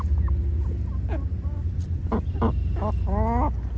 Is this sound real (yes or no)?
yes